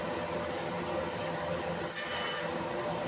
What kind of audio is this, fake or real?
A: real